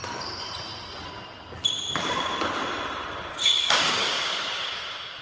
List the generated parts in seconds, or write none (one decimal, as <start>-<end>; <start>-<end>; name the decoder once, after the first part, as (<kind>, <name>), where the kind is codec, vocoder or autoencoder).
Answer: 3.3-5.2 (codec, DAC)